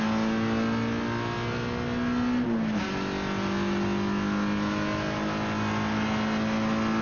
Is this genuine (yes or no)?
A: yes